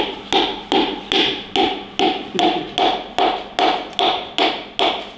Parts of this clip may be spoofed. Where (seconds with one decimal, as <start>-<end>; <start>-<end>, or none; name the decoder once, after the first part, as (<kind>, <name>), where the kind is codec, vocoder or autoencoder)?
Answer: none